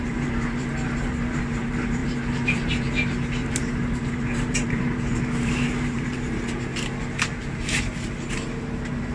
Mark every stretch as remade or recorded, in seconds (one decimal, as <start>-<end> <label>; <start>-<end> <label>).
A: 0.0-6.7 remade; 6.7-7.5 recorded; 7.5-9.1 remade